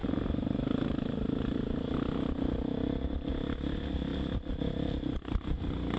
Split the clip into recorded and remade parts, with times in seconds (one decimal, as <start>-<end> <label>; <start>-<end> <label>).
0.0-6.0 recorded

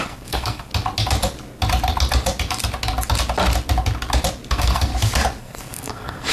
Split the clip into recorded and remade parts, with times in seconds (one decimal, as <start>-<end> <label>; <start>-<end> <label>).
0.0-0.7 remade; 0.7-4.5 recorded; 4.5-4.9 remade; 4.9-5.4 recorded; 5.4-6.3 remade

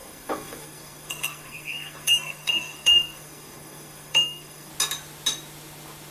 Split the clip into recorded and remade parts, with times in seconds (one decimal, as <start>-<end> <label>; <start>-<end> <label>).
0.0-4.7 remade; 4.7-6.1 recorded

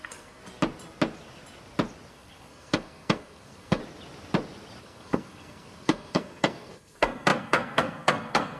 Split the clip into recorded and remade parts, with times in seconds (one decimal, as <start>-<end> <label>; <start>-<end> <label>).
0.0-0.4 remade; 0.4-2.1 recorded; 2.1-3.8 remade; 3.8-4.8 recorded; 4.8-8.6 remade

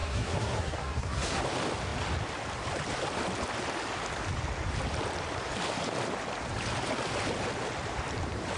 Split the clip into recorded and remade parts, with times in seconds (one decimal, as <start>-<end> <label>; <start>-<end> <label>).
0.0-1.4 remade; 1.4-8.6 recorded

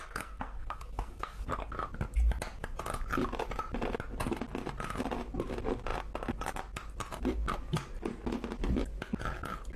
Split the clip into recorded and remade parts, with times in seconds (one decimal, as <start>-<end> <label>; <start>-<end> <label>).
0.0-1.7 remade; 1.7-9.8 recorded

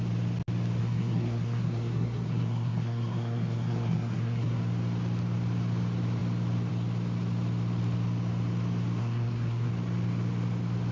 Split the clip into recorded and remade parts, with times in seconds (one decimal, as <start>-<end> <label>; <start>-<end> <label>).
0.0-0.8 recorded; 0.8-4.6 remade; 4.6-9.0 recorded; 9.0-9.7 remade; 9.7-10.9 recorded

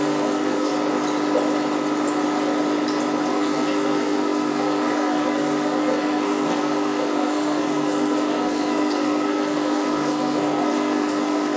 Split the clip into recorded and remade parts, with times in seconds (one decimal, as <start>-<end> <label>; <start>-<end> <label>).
0.0-0.7 remade; 0.7-3.3 recorded; 3.3-11.6 remade